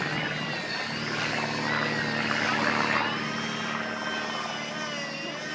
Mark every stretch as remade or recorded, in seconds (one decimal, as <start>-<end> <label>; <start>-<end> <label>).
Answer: 0.0-5.5 recorded

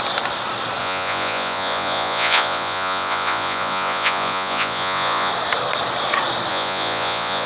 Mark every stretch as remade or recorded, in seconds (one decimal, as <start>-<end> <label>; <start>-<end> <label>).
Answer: 0.0-0.8 recorded; 0.8-5.3 remade; 5.3-6.5 recorded; 6.5-7.5 remade